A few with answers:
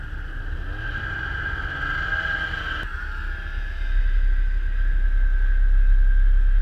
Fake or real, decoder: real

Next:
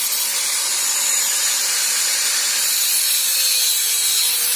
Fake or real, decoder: fake, vocoder, BigVGAN v2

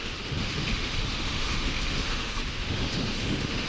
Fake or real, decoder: fake, autoencoder, DAC-VAE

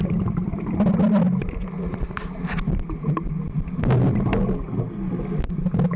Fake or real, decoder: real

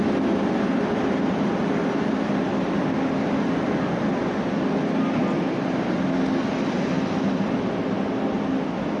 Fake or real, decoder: real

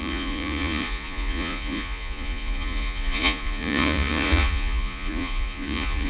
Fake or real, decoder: fake, vocoder, Vocos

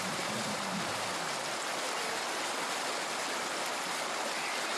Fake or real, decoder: real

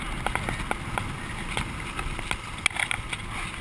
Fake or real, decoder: real